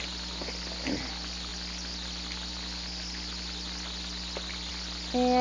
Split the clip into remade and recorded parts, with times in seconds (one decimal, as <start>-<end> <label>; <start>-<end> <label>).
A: 0.0-5.4 recorded